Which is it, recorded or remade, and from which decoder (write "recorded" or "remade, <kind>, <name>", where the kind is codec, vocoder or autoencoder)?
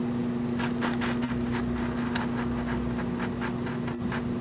recorded